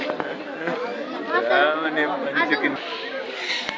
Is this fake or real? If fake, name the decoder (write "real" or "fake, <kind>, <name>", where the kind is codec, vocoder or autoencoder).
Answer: real